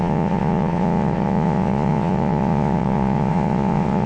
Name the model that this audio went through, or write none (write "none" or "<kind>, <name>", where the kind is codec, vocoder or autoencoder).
vocoder, Vocos